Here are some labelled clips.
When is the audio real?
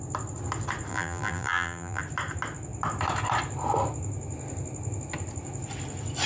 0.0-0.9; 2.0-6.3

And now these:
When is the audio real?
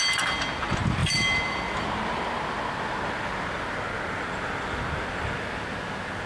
0.0-6.3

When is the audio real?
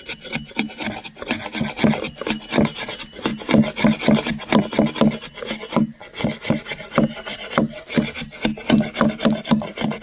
0.0-10.0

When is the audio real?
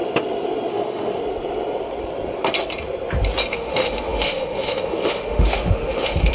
0.0-0.7; 1.2-3.5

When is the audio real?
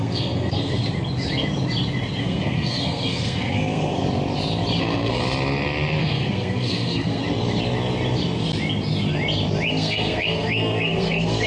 0.8-2.2; 4.0-4.8; 5.2-6.0; 7.2-9.7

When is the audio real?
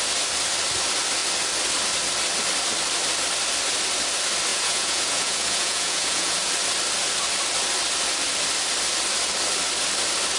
0.0-4.5; 6.5-10.4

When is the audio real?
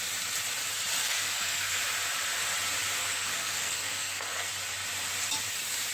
0.0-1.0; 1.8-3.0; 4.5-5.9